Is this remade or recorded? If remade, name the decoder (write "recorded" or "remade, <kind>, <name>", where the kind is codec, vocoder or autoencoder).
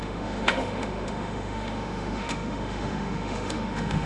remade, autoencoder, DAC-VAE